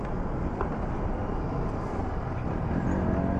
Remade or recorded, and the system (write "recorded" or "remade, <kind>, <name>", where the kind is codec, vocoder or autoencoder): recorded